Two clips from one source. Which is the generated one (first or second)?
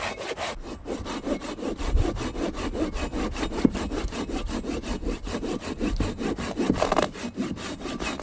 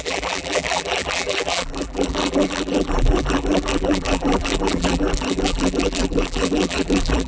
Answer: second